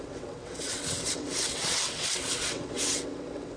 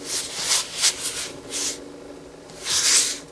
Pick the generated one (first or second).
first